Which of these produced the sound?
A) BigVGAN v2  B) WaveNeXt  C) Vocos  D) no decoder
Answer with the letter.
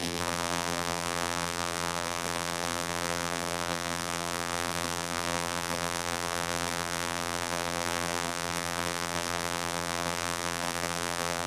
A